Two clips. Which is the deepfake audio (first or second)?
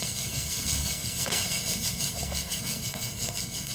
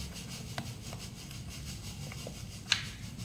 first